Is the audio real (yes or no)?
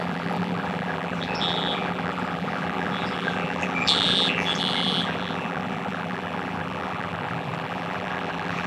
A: no